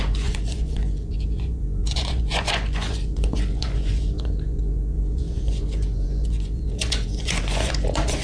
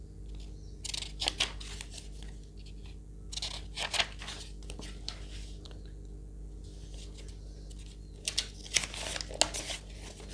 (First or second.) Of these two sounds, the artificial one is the first